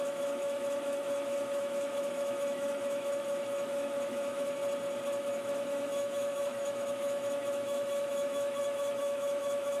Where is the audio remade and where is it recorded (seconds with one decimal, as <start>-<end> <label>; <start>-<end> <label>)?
0.0-4.6 remade; 4.6-5.2 recorded; 5.2-9.8 remade